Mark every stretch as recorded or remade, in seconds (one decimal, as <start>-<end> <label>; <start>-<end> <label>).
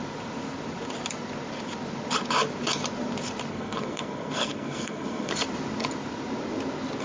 0.0-3.5 recorded; 3.5-5.3 remade; 5.3-7.0 recorded